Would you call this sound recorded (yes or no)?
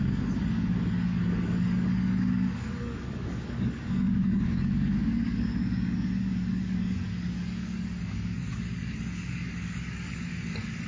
no